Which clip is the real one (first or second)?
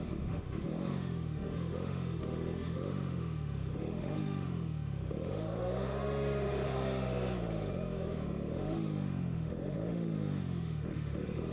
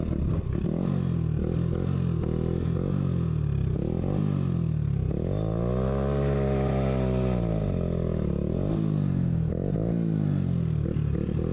second